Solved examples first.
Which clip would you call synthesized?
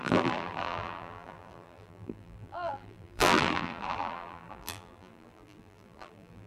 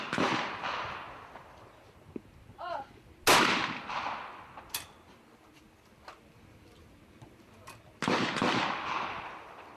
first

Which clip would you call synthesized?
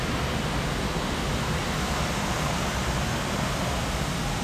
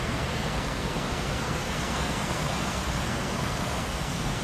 second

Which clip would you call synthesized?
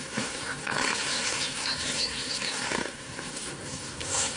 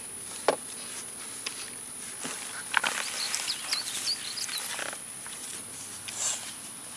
first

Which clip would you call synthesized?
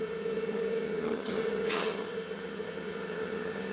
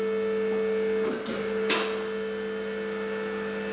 first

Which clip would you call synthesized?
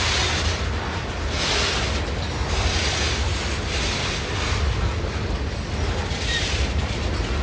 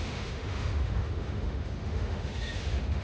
second